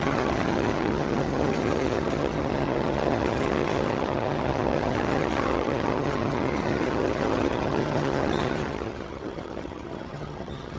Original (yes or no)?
no